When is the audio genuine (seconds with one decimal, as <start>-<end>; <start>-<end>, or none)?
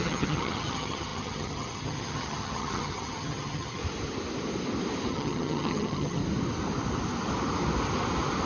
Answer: 3.8-5.1; 6.2-8.5